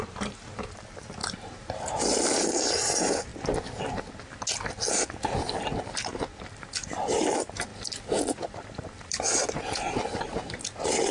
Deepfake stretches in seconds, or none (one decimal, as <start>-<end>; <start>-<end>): 0.0-3.3; 6.6-7.7; 8.3-11.1